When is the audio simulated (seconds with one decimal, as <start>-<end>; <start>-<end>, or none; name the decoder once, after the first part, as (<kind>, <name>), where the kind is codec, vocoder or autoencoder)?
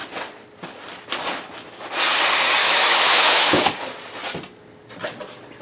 2.6-3.7 (autoencoder, DAC-VAE)